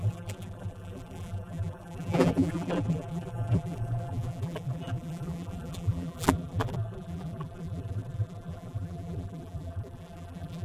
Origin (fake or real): fake